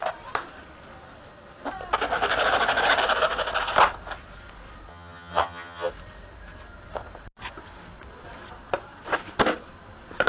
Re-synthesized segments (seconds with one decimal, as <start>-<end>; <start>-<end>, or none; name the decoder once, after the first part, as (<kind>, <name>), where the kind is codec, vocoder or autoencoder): 4.9-5.9 (vocoder, HiFi-GAN)